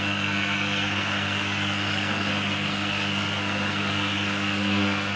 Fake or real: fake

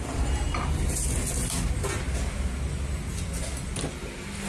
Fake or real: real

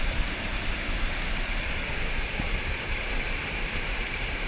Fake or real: fake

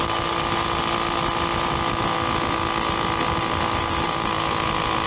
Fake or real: real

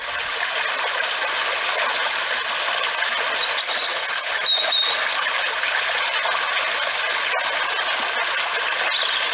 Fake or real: real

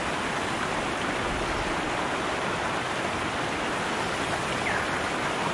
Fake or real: real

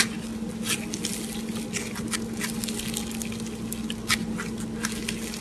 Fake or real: real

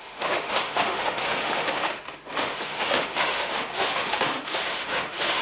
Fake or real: fake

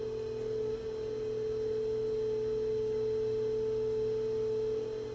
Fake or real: real